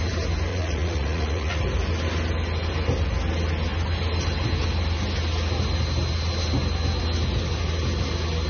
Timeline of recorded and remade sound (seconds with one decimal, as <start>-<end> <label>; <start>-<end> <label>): 0.0-0.5 recorded; 0.5-1.6 remade; 1.6-8.5 recorded